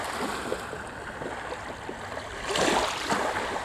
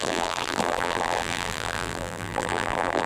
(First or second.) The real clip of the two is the first